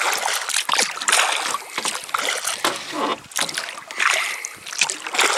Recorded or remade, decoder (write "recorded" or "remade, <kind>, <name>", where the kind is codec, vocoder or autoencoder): recorded